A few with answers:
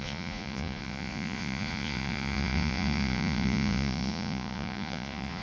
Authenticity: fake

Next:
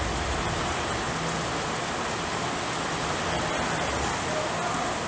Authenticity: real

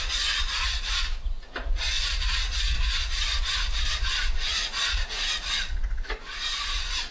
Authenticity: fake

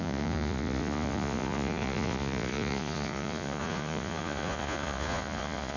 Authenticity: fake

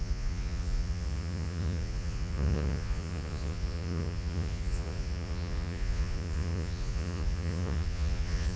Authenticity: fake